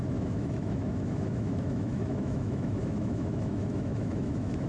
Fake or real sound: fake